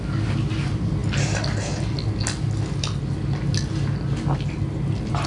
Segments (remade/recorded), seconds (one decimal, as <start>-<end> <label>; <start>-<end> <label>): 0.0-5.3 recorded